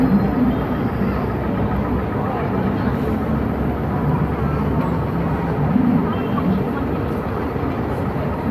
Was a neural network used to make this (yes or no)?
no